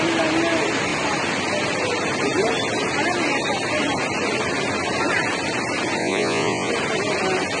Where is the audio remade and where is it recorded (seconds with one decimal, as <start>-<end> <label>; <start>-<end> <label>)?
0.0-6.0 recorded; 6.0-6.7 remade; 6.7-7.6 recorded